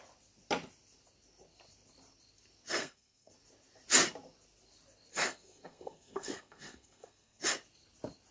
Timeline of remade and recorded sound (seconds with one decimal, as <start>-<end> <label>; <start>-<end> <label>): 0.0-2.8 recorded; 2.8-3.3 remade; 3.3-5.1 recorded; 5.1-7.4 remade; 7.4-8.3 recorded